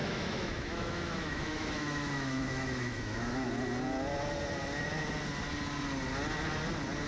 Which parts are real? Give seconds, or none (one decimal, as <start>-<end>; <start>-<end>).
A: 3.5-7.1